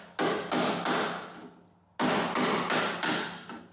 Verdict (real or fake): real